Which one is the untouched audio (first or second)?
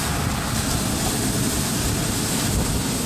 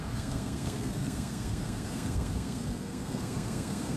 first